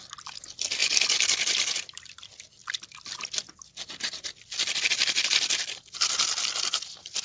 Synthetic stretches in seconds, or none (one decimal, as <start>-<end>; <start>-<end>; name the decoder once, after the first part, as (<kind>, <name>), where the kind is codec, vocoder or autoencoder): none

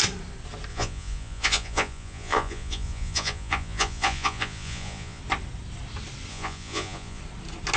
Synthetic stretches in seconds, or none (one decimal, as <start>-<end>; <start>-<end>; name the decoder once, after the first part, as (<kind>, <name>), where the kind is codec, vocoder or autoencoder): 0.7-5.2 (vocoder, Vocos); 6.3-7.2

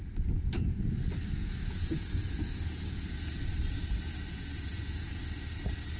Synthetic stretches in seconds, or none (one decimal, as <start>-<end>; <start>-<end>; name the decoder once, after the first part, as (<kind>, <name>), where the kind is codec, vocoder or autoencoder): 1.4-3.0 (vocoder, Vocos); 4.3-5.2

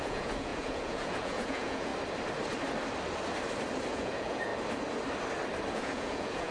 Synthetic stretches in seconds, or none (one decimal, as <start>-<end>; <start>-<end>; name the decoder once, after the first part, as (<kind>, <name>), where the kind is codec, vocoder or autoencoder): 0.0-1.9 (vocoder, Vocos); 3.9-4.5; 5.7-6.5